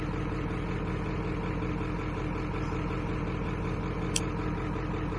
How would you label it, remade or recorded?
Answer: recorded